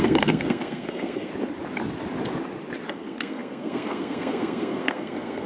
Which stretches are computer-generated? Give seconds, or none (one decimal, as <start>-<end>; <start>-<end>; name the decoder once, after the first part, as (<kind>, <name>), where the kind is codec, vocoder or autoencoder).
0.0-1.3 (codec, SNAC); 2.9-5.5